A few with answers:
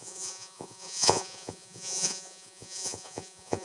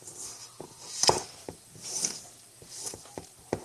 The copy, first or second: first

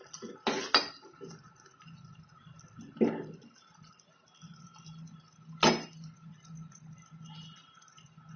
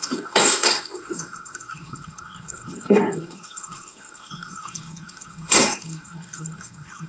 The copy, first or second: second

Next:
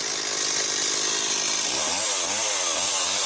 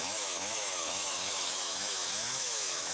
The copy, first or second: second